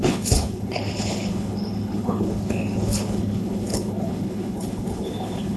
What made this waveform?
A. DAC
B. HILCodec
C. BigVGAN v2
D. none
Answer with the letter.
B